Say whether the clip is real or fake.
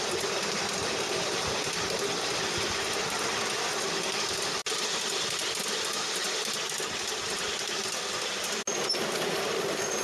real